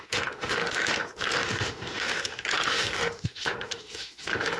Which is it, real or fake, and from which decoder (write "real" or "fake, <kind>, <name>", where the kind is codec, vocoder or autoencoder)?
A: fake, autoencoder, DAC-VAE